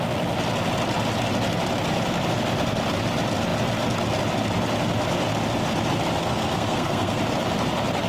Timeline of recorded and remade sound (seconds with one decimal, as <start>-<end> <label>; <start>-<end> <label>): 0.0-6.2 recorded; 6.2-7.2 remade; 7.2-8.1 recorded